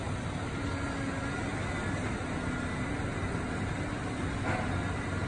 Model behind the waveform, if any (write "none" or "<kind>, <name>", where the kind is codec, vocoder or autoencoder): none